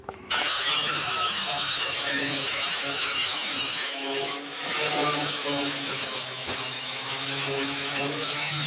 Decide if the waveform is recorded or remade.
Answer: remade